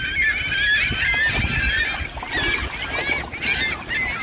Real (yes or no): yes